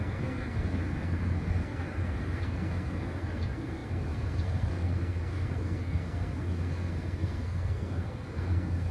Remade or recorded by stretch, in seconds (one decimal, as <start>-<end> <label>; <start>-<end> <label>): 0.0-8.9 remade